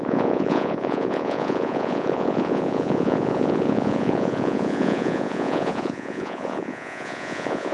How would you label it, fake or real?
fake